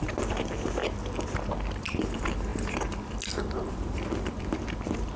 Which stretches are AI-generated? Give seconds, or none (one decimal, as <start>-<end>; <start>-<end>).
0.0-0.8; 1.5-2.5; 3.4-5.2